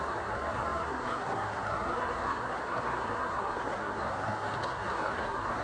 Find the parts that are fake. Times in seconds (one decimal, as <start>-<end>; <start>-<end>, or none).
0.0-5.6